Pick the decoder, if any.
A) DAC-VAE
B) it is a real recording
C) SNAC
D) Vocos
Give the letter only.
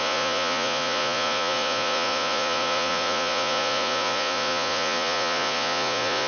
D